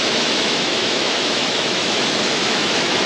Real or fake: fake